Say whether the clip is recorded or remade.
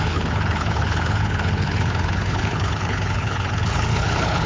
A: remade